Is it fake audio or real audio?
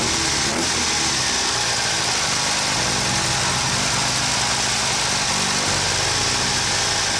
real